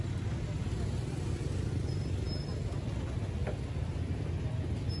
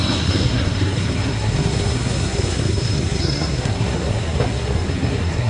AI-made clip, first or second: second